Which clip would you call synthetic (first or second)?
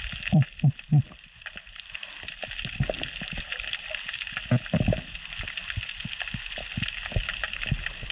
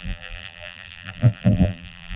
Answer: second